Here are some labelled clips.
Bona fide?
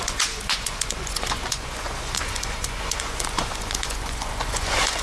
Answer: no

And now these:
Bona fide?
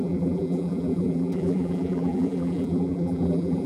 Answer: no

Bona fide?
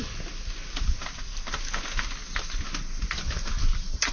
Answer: yes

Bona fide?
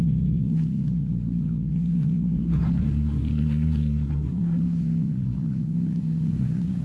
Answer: no